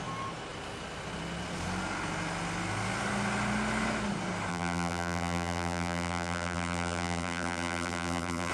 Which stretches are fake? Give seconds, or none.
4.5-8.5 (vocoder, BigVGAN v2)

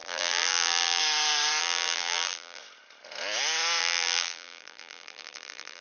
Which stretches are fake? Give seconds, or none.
0.0-1.0 (vocoder, BigVGAN v2); 1.6-2.6; 3.8-5.8

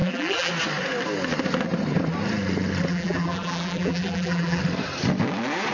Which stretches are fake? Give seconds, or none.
0.0-0.5 (vocoder, BigVGAN v2); 2.9-4.6

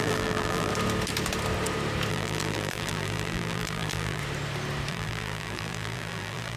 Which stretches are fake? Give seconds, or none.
0.0-0.7 (vocoder, BigVGAN v2); 2.1-4.2; 4.9-6.6